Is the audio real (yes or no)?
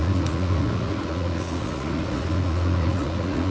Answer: no